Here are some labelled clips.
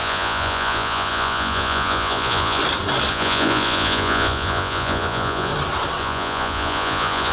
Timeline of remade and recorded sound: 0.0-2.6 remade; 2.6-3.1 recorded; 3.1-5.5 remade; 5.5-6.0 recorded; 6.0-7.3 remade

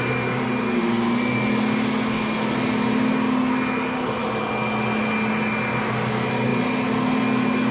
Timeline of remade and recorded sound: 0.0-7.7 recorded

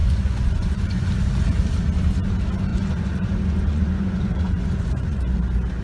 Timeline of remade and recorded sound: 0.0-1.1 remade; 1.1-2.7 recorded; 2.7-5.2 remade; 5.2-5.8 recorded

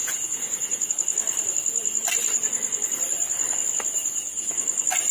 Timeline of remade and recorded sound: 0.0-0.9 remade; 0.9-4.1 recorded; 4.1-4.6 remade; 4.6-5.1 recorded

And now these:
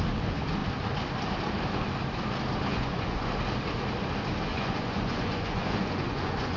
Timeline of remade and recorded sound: 0.0-2.7 recorded; 2.7-3.3 remade; 3.3-4.5 recorded; 4.5-6.6 remade

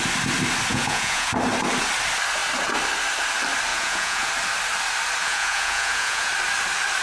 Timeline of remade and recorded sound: 0.0-0.7 recorded; 0.7-1.3 remade; 1.3-3.7 recorded; 3.7-4.3 remade; 4.3-5.2 recorded; 5.2-6.3 remade; 6.3-7.0 recorded

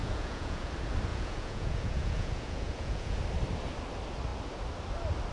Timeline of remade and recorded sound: 0.0-0.7 remade; 0.7-1.1 recorded; 1.1-3.2 remade; 3.2-5.3 recorded

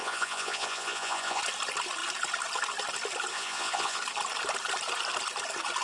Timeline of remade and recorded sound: 0.0-1.4 remade; 1.4-3.3 recorded; 3.3-4.0 remade; 4.0-5.8 recorded